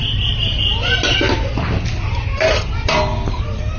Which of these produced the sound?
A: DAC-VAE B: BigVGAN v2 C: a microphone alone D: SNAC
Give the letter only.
C